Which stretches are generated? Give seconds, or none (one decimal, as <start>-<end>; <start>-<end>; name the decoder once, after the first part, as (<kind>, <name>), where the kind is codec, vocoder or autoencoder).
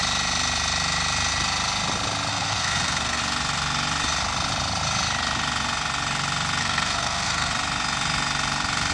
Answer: 2.3-3.2 (codec, SNAC); 6.6-7.5